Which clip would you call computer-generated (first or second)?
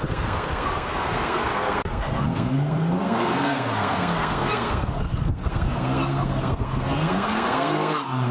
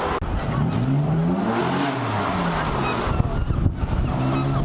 first